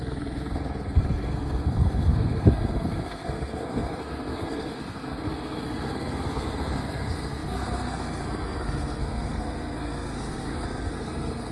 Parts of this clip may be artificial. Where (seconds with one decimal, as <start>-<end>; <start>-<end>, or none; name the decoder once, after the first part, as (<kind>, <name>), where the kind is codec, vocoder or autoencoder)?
0.0-11.5 (codec, SNAC)